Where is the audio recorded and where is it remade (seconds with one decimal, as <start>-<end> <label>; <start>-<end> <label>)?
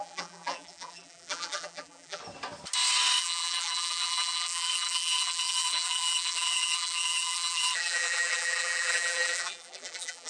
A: 0.0-2.2 remade; 2.2-3.2 recorded; 3.2-10.3 remade